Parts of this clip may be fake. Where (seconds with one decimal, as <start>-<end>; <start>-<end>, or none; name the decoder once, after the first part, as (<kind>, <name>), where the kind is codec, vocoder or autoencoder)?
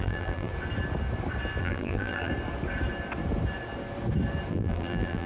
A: 0.0-0.5 (vocoder, BigVGAN v2); 1.6-2.3; 4.5-5.3